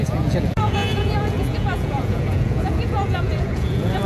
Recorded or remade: remade